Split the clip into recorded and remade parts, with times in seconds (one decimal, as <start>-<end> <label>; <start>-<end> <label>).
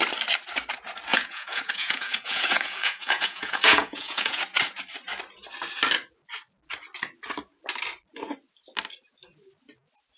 0.0-1.1 recorded; 1.1-4.4 remade; 4.4-10.2 recorded